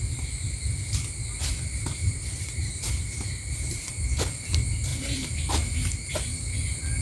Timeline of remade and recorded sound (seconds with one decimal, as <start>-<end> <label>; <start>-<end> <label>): 0.0-1.4 recorded; 1.4-3.9 remade; 3.9-4.9 recorded; 4.9-5.4 remade; 5.4-7.0 recorded